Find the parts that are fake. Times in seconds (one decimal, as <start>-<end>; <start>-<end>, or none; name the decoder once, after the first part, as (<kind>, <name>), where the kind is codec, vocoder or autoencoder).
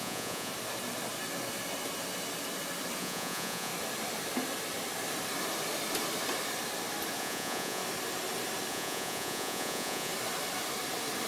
0.0-0.5 (vocoder, Vocos); 3.0-3.7; 7.2-7.8; 8.7-10.1